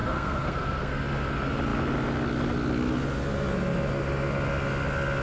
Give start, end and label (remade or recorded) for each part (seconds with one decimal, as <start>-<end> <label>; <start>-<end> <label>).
0.0-1.0 remade; 1.0-5.2 recorded